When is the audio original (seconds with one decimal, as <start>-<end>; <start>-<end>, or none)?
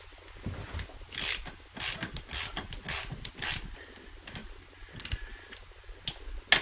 0.0-6.6